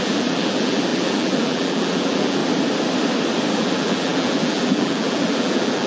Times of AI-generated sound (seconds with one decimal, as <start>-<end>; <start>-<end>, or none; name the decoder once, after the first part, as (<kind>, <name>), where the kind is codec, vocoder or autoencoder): 0.0-2.4 (vocoder, BigVGAN v2); 3.5-5.9